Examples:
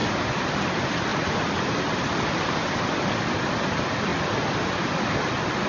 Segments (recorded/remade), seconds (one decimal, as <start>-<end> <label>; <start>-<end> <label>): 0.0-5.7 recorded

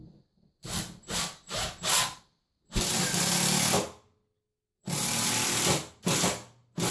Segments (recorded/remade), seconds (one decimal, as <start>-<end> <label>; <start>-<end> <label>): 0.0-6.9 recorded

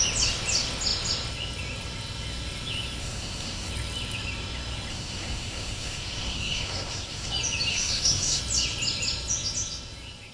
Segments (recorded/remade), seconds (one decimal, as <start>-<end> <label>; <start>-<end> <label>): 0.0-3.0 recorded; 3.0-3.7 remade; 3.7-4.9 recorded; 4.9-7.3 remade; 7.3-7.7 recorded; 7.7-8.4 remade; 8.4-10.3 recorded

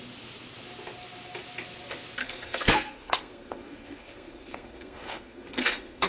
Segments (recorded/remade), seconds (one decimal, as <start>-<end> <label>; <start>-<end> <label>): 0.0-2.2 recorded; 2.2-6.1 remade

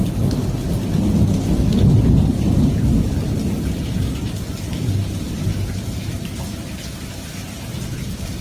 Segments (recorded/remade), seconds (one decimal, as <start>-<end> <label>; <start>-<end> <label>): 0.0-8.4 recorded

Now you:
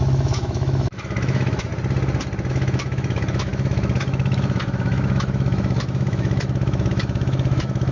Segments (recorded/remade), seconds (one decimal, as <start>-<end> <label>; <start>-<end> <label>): 0.0-1.7 remade; 1.7-2.5 recorded; 2.5-7.9 remade